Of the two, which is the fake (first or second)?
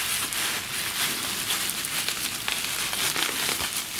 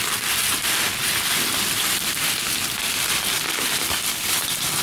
second